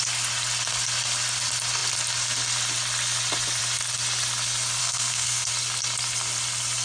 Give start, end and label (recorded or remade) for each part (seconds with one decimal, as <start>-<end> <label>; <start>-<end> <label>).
0.0-4.8 recorded; 4.8-5.5 remade; 5.5-6.8 recorded